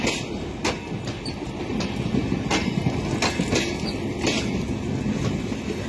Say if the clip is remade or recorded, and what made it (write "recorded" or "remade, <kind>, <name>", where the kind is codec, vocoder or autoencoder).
recorded